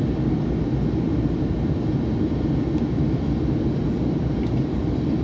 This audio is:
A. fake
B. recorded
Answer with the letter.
B